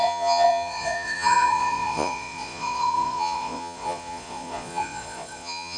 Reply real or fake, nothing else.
fake